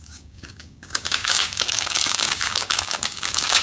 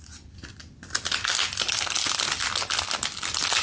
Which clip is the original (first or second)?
second